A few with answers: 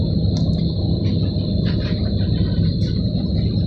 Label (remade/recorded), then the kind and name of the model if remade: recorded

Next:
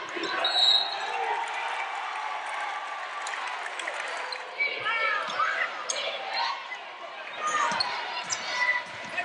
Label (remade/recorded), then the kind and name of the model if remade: recorded